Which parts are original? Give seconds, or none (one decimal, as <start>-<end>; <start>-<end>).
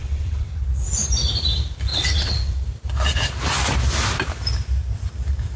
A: 0.6-1.9; 2.6-5.6